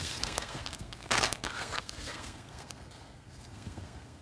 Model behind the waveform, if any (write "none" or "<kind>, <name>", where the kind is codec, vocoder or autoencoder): codec, SNAC